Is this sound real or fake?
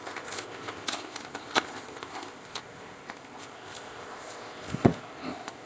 fake